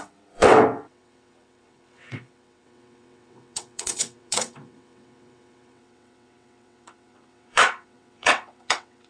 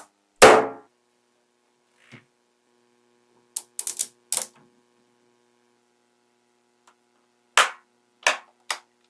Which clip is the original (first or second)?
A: second